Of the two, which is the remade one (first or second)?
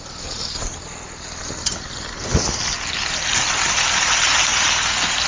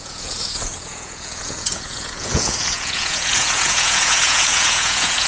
second